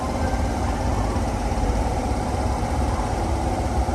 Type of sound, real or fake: fake